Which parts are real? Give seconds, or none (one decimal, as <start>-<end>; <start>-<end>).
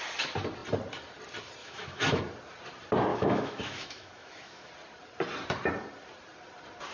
0.0-1.6; 2.2-3.1; 4.7-6.9